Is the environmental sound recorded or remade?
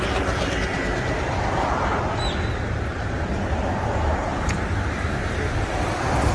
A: recorded